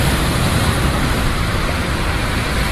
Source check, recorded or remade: remade